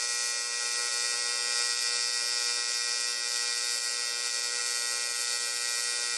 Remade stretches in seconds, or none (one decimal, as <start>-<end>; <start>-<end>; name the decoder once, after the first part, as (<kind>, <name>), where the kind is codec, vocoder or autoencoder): none